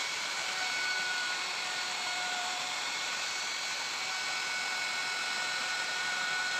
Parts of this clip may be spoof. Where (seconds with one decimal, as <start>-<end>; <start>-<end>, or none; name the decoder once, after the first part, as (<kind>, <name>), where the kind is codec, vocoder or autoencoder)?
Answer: 0.0-3.1 (vocoder, BigVGAN v2); 5.6-6.6